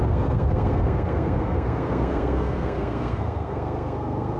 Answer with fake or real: fake